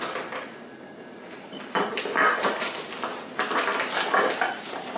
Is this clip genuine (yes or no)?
yes